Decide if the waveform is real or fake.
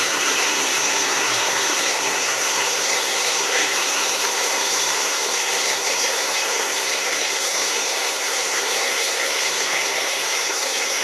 fake